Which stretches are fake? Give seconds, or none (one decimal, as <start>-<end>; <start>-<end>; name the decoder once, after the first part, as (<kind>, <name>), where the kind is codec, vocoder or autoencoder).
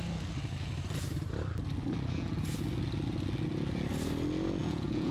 4.6-5.1 (vocoder, Vocos)